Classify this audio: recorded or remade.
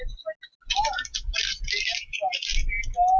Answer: recorded